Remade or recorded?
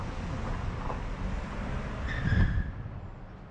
recorded